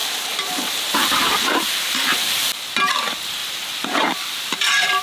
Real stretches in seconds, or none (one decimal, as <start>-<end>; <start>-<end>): 2.3-3.4